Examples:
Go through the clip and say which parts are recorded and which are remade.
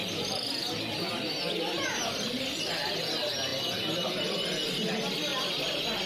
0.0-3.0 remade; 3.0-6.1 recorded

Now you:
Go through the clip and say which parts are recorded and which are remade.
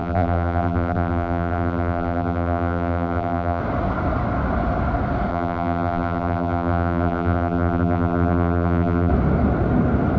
0.0-3.6 remade; 3.6-5.3 recorded; 5.3-9.1 remade; 9.1-10.2 recorded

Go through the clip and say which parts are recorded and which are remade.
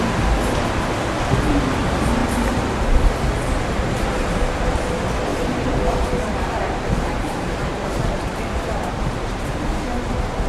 0.0-5.3 recorded; 5.3-9.8 remade; 9.8-10.5 recorded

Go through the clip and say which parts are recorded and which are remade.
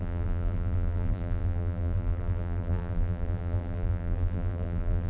0.0-5.1 remade